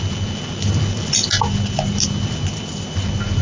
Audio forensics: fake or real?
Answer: real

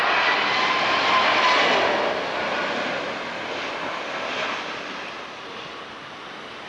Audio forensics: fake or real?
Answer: real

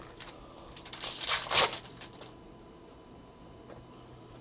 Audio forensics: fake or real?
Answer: fake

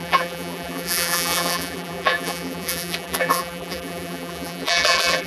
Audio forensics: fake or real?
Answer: fake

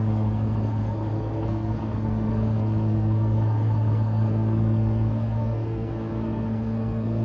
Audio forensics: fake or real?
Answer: fake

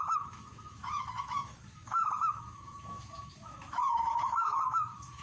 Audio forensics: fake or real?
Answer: fake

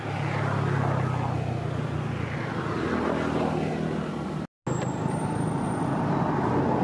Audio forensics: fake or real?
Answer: real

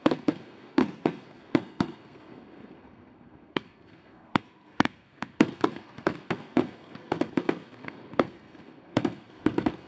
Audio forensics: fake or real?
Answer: fake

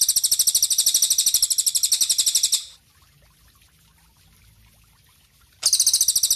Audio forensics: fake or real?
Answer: real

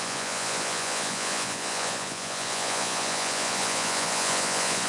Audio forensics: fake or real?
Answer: fake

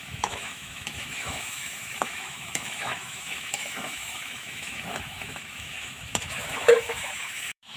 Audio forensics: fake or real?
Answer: fake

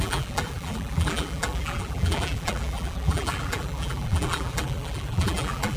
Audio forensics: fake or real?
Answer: fake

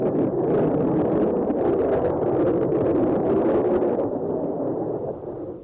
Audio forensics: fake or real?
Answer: real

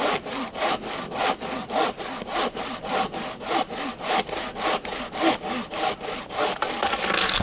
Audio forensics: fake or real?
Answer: real